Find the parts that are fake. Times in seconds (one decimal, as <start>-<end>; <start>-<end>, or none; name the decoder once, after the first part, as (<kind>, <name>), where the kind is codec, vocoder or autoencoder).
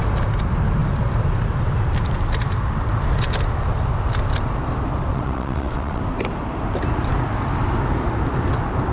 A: 5.1-6.0 (vocoder, WaveNeXt)